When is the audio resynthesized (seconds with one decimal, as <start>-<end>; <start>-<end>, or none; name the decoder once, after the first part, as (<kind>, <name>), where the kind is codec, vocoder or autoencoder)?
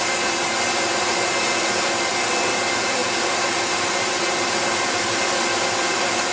none